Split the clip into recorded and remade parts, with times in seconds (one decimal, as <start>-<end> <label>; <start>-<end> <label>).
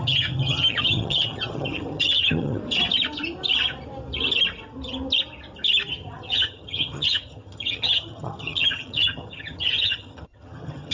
0.0-2.6 remade; 2.6-5.9 recorded; 5.9-10.9 remade